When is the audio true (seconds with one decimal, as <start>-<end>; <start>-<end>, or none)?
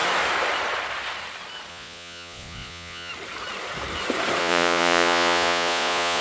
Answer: 0.0-1.7; 3.1-4.4